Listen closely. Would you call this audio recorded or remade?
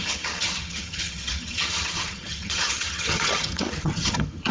remade